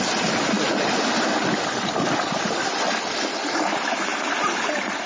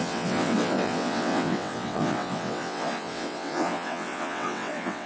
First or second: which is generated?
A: second